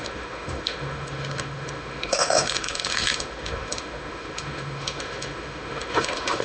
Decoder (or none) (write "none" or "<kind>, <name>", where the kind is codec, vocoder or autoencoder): autoencoder, DAC-VAE